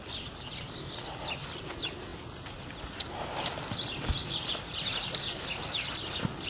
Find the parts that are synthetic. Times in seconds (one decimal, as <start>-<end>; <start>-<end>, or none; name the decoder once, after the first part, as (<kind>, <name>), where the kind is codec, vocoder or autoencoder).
none